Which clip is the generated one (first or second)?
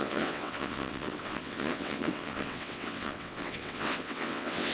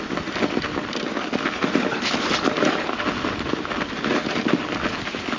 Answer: first